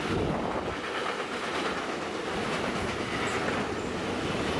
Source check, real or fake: real